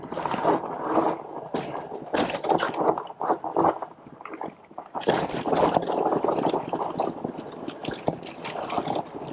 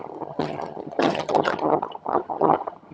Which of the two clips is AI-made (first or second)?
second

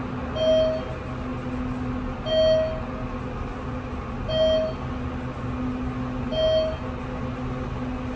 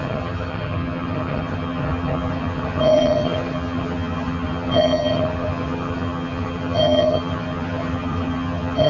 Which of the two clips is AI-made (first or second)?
second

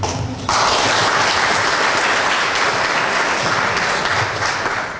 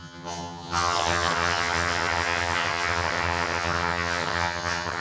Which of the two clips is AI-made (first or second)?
second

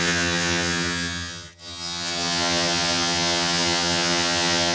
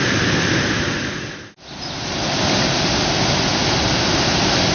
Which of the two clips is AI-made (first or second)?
first